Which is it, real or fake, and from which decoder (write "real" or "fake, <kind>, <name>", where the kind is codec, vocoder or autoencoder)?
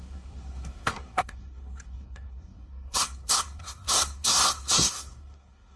fake, codec, SNAC